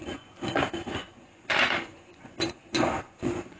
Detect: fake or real fake